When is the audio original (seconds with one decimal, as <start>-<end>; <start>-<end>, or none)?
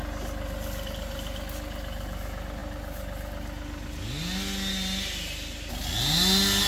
0.0-6.7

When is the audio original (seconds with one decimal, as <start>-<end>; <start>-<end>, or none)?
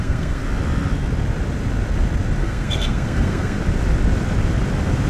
0.4-2.4; 3.6-5.1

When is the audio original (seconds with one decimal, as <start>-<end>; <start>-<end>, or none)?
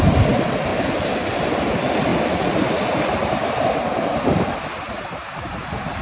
0.0-6.0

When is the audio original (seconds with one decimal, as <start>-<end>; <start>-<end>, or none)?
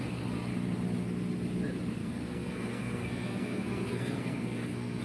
0.0-2.0